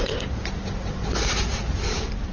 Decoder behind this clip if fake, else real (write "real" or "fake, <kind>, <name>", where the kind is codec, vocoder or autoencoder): fake, vocoder, BigVGAN v2